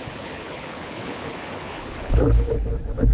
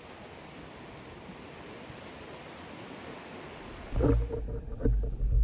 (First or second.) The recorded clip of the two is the second